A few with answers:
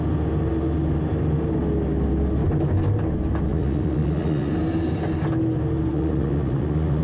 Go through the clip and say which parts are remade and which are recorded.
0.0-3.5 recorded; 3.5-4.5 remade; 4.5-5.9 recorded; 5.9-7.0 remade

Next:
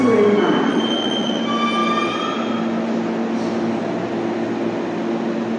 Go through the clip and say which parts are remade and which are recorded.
0.0-0.7 recorded; 0.7-1.4 remade; 1.4-5.6 recorded

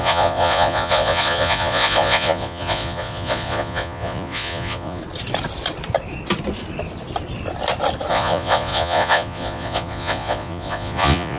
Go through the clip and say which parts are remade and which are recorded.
0.0-5.0 remade; 5.0-8.1 recorded; 8.1-11.4 remade